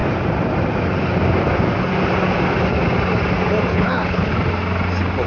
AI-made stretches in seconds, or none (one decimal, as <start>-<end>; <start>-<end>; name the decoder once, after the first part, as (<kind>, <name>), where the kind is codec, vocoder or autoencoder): 3.7-4.3 (codec, HILCodec)